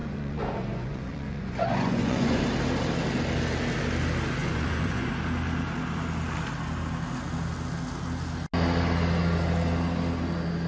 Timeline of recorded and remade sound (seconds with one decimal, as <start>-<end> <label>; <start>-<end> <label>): 0.0-2.4 remade; 2.4-4.4 recorded; 4.4-5.1 remade; 5.1-10.7 recorded